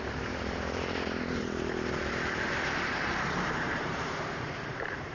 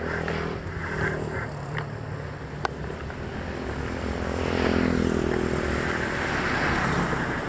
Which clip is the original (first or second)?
second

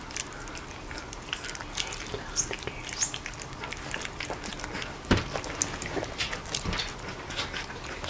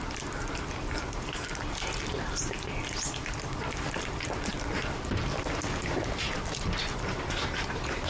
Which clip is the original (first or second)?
first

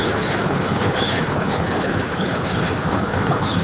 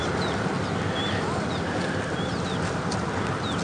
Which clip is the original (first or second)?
second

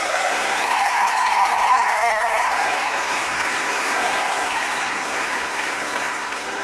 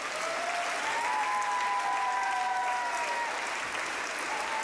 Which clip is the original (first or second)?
second